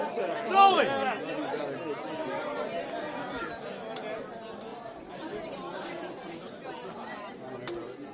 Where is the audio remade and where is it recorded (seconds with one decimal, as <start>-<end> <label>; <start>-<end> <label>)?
0.0-2.2 recorded; 2.2-2.8 remade; 2.8-4.7 recorded; 4.7-6.6 remade; 6.6-8.1 recorded